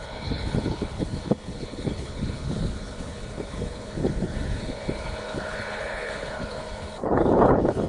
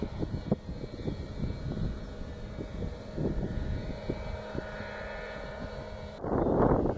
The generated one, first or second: first